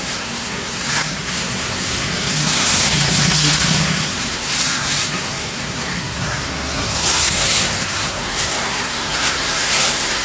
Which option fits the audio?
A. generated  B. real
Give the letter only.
A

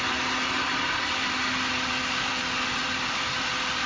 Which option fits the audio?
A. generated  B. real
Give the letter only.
B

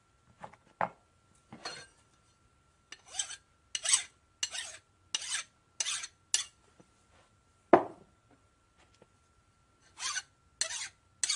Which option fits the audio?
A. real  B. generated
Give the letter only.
A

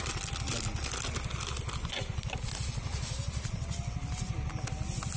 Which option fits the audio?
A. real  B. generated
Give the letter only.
A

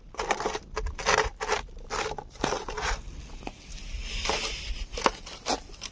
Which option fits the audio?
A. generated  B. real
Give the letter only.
B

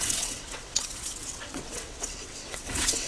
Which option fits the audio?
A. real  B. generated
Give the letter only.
B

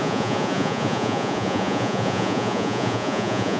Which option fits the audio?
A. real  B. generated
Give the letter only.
B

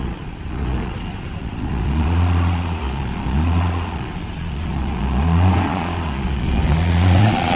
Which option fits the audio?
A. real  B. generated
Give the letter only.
B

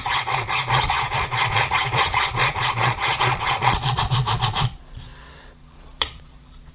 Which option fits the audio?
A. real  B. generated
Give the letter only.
B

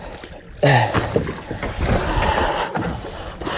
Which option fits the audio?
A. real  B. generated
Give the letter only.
A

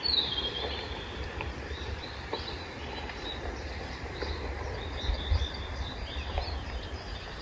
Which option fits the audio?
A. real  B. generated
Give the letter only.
B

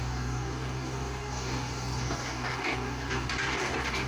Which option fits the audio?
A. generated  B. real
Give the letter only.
A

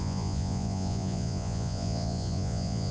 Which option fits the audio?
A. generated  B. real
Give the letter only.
A